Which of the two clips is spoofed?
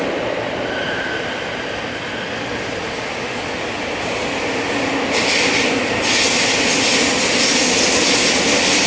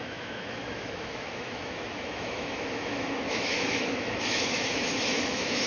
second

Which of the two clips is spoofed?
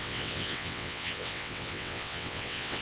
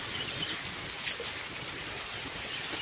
first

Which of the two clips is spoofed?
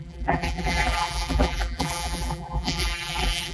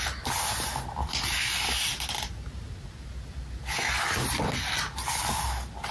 first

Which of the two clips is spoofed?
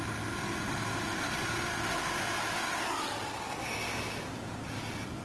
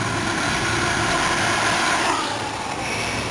second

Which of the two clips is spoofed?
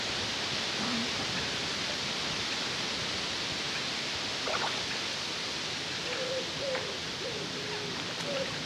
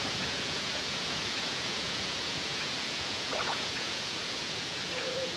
second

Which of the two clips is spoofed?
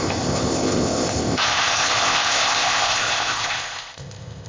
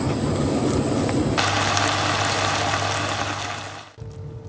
first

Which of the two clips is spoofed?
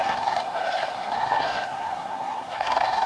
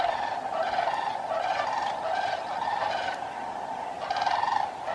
first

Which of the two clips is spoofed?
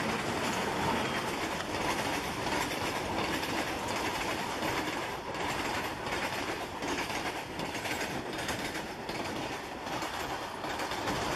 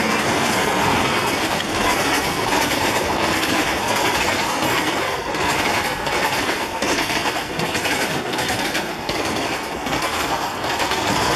second